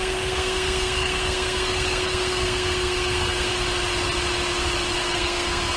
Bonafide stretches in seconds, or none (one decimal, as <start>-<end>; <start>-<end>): 3.5-5.0